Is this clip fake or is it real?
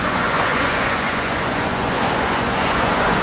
fake